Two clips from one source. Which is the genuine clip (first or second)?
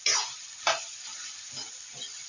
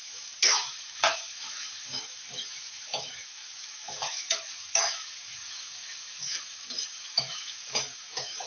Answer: first